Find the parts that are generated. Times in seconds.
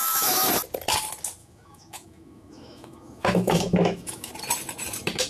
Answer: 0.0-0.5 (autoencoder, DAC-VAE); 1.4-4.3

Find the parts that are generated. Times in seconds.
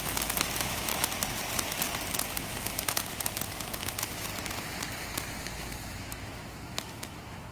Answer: 0.0-0.9 (autoencoder, DAC-VAE); 2.4-4.3; 5.4-7.5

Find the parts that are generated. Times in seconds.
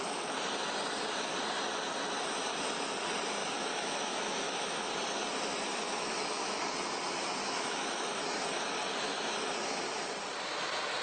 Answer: 3.4-4.9 (autoencoder, DAC-VAE); 5.7-6.6; 7.4-8.2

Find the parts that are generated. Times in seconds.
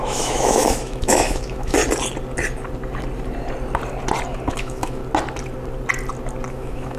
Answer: 0.0-1.8 (autoencoder, DAC-VAE); 4.5-5.0; 6.5-7.0